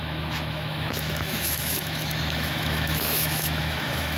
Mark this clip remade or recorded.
remade